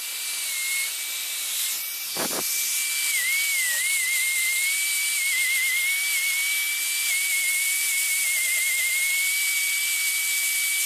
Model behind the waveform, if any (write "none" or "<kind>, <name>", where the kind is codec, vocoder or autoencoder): none